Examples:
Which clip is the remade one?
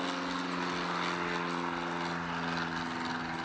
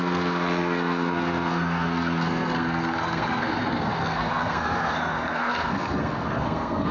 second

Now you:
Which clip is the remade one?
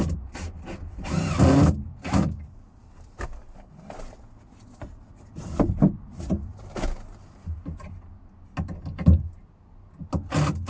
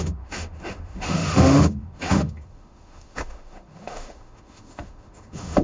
second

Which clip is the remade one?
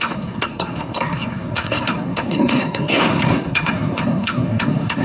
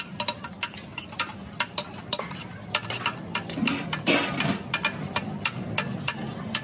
first